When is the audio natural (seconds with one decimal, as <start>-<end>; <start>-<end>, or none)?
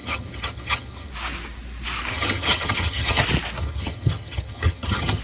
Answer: 1.1-2.1; 3.2-3.6